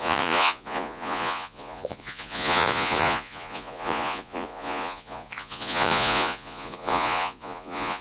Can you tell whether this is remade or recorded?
remade